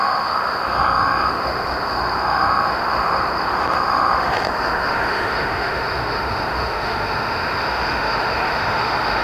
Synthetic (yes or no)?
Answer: yes